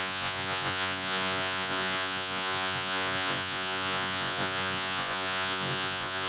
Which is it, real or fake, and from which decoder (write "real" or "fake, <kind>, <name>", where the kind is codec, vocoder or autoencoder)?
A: fake, vocoder, Vocos